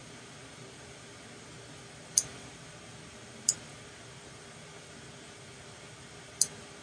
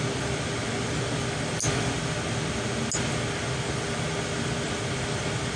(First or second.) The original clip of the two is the second